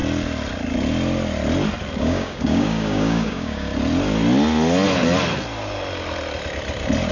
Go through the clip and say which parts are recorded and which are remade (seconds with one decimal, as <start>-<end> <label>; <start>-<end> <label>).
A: 0.0-2.0 recorded; 2.0-3.7 remade; 3.7-7.1 recorded